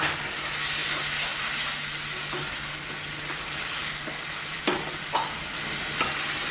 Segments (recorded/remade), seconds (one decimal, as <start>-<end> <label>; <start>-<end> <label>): 0.0-6.5 recorded